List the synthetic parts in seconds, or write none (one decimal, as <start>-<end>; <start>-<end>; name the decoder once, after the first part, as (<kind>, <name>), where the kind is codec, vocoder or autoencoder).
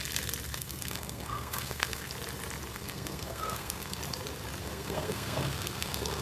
0.5-2.1 (codec, SNAC); 2.7-4.0; 4.6-6.2